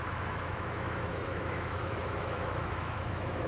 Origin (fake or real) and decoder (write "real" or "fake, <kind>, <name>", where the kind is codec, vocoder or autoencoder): fake, autoencoder, DAC-VAE